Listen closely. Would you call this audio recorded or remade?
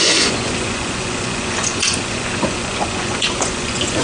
remade